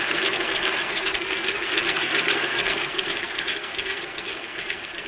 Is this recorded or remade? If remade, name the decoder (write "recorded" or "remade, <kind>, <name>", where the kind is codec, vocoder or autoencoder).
remade, codec, SNAC